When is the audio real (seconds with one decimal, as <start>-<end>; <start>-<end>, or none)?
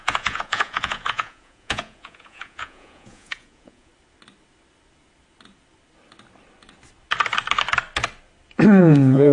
3.9-8.8